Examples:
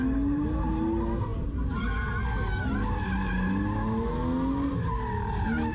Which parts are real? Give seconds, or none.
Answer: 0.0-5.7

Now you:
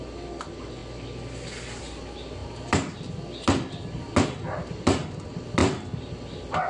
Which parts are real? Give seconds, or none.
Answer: 0.0-6.7

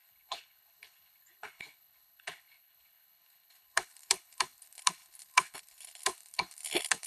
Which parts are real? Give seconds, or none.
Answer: none